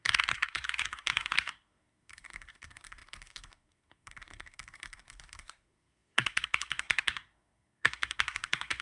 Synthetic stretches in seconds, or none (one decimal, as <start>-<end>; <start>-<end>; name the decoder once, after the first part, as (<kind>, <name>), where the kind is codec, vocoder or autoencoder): 0.0-8.8 (codec, SNAC)